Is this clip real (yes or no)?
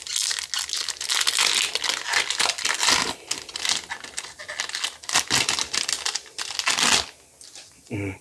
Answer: yes